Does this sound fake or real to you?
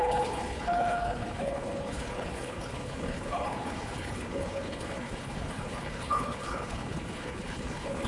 fake